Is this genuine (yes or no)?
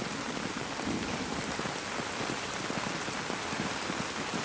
no